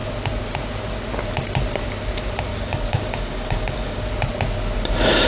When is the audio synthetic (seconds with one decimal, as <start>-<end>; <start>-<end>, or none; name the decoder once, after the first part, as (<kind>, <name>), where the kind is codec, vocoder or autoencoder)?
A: 2.5-4.1 (codec, DAC)